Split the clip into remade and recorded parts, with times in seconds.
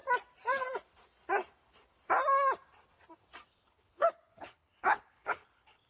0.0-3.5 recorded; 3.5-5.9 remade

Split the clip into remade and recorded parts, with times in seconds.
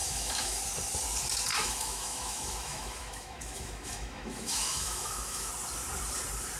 0.0-0.6 remade; 0.6-1.5 recorded; 1.5-5.5 remade; 5.5-6.6 recorded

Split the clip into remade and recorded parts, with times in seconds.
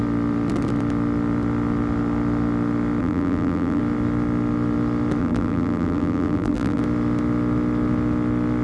0.0-3.0 recorded; 3.0-3.8 remade; 3.8-5.2 recorded; 5.2-6.8 remade; 6.8-8.6 recorded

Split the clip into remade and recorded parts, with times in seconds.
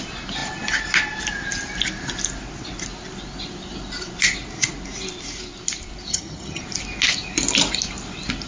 0.0-6.1 recorded; 6.1-6.6 remade; 6.6-8.5 recorded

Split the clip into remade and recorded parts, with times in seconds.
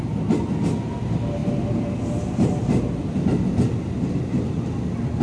0.0-5.2 recorded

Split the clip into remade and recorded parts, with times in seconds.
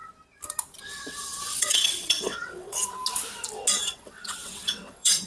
0.0-0.8 recorded; 0.8-2.8 remade; 2.8-3.8 recorded; 3.8-5.3 remade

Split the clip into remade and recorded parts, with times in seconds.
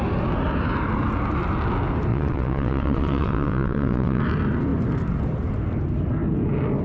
0.0-2.1 recorded; 2.1-4.2 remade; 4.2-6.8 recorded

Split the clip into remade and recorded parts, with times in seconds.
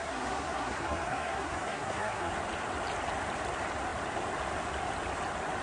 0.0-2.3 remade; 2.3-5.6 recorded